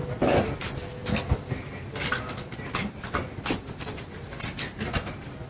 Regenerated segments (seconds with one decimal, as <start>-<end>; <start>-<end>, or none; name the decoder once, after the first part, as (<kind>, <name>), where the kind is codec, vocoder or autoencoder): none